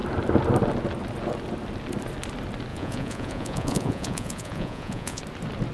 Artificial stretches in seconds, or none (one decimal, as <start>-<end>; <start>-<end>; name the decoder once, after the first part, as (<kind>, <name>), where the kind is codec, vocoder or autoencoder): 2.7-5.2 (vocoder, Vocos)